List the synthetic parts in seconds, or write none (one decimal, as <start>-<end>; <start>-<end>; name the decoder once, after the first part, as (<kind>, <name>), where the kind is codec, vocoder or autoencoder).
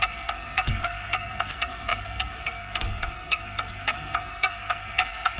0.0-5.4 (codec, SNAC)